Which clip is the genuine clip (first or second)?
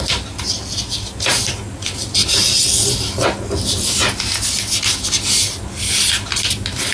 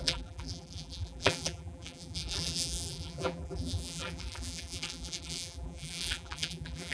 first